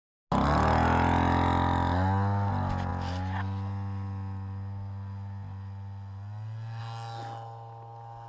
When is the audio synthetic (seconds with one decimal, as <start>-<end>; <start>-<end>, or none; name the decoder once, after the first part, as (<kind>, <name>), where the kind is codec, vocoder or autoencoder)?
none